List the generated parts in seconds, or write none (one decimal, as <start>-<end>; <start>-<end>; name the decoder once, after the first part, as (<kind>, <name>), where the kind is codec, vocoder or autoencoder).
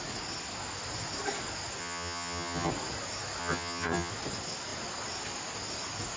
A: 1.8-2.7 (vocoder, HiFi-GAN); 3.4-4.1